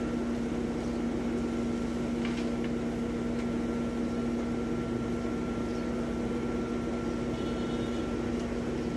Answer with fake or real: real